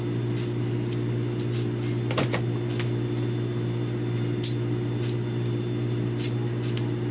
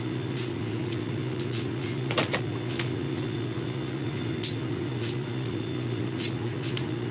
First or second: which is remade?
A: second